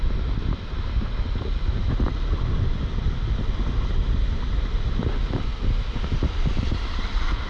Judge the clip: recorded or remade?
recorded